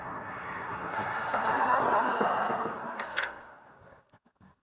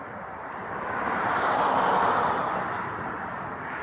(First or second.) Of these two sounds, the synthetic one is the first